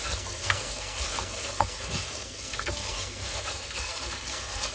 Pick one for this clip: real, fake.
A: fake